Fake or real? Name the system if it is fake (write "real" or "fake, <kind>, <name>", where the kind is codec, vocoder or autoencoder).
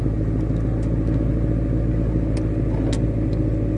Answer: real